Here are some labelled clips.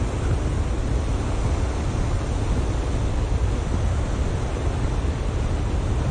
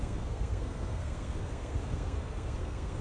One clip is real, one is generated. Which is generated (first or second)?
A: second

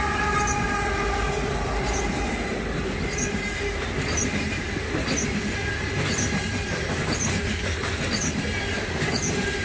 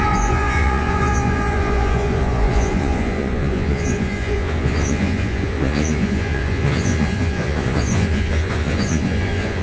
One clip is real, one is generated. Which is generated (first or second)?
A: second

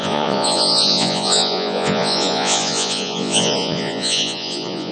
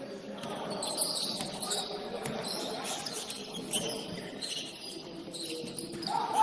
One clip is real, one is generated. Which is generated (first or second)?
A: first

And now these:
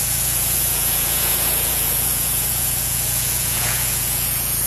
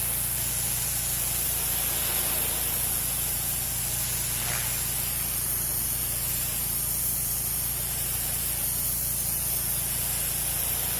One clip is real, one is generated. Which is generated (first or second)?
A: first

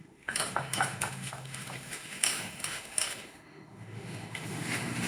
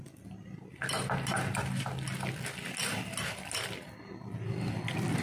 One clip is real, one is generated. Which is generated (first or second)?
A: first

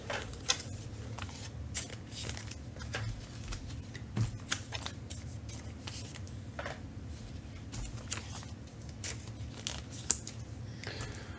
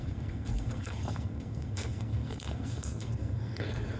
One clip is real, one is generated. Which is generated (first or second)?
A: second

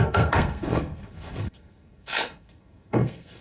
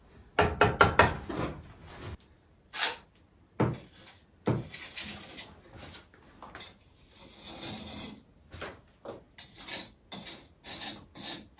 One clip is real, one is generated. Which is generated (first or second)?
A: first